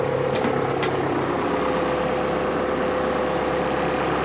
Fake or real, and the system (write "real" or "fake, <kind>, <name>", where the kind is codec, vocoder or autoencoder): real